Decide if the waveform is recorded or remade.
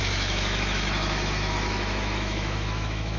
remade